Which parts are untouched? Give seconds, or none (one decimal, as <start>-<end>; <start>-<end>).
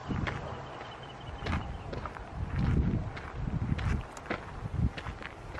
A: 0.0-5.6